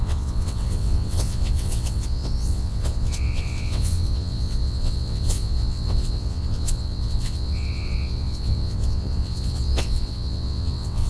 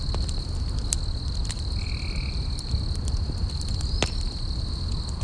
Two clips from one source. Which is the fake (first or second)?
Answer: first